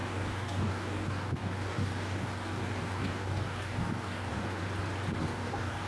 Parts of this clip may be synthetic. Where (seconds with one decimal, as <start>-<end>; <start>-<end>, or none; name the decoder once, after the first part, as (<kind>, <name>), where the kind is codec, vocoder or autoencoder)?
0.0-4.6 (codec, DAC); 5.2-5.9